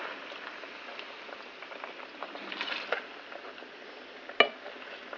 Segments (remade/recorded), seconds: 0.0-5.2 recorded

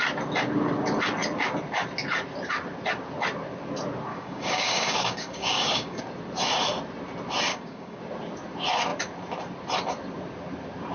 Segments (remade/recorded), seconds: 0.0-4.1 recorded; 4.1-6.0 remade; 6.0-7.5 recorded; 7.5-8.0 remade; 8.0-10.9 recorded

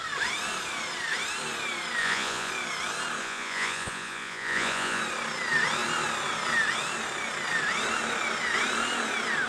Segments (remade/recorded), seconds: 0.0-2.0 recorded; 2.0-2.5 remade; 2.5-3.2 recorded; 3.2-5.0 remade; 5.0-9.5 recorded

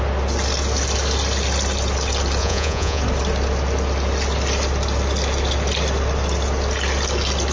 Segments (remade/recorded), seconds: 0.0-2.4 recorded; 2.4-3.0 remade; 3.0-7.5 recorded

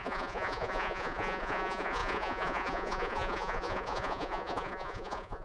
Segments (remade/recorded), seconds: 0.0-5.4 remade

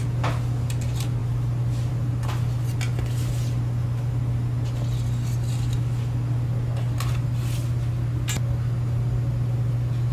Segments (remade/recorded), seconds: 0.0-10.1 recorded